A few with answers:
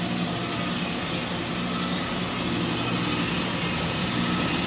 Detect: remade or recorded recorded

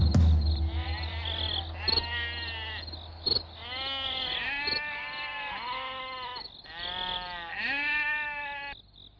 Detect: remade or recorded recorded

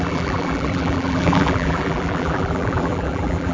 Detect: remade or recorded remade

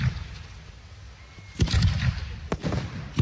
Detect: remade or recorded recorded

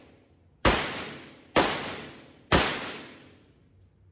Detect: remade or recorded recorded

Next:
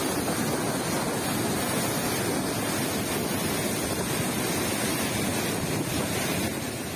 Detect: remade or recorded recorded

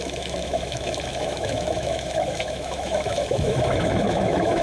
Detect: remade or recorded remade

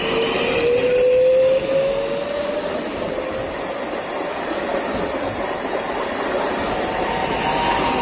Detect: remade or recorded recorded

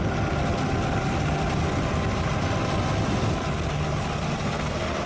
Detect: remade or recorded recorded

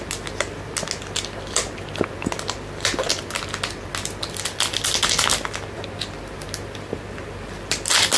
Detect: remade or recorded recorded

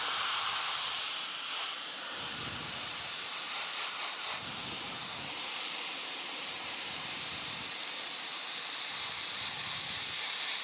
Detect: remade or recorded remade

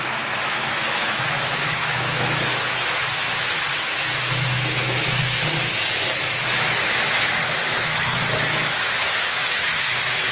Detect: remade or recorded remade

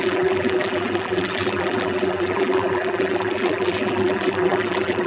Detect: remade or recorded remade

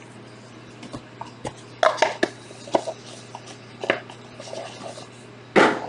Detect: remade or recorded recorded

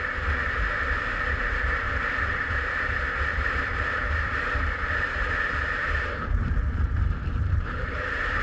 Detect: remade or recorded remade